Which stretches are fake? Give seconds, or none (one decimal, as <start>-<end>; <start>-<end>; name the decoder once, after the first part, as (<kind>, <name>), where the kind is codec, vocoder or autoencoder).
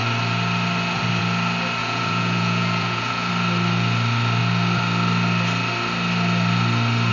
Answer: 1.8-3.3 (vocoder, Vocos)